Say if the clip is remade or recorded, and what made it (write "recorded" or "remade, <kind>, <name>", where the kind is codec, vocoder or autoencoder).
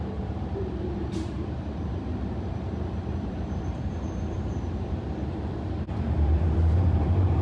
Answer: remade, vocoder, BigVGAN v2